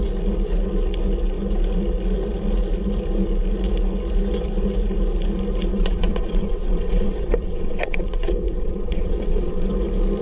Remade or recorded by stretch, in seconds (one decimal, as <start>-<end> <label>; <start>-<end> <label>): 0.0-5.7 recorded; 5.7-9.7 remade; 9.7-10.2 recorded